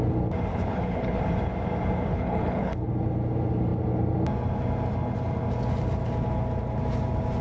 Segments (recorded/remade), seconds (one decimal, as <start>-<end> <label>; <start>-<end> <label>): 0.0-0.5 recorded; 0.5-1.2 remade; 1.2-2.1 recorded; 2.1-2.9 remade; 2.9-7.4 recorded